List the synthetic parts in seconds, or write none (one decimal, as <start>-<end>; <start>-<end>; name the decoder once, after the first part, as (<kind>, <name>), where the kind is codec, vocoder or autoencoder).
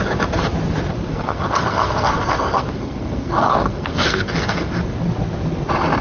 1.1-4.7 (codec, SNAC)